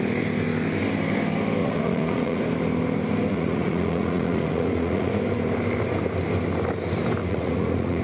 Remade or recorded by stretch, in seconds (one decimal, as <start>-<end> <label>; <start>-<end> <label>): 0.0-1.6 recorded; 1.6-2.4 remade; 2.4-3.3 recorded; 3.3-5.1 remade; 5.1-7.2 recorded; 7.2-8.0 remade